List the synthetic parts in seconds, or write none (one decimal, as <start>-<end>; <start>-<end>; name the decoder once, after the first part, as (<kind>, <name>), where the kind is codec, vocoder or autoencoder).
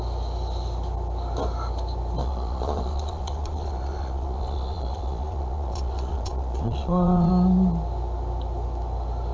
2.2-7.3 (vocoder, Vocos)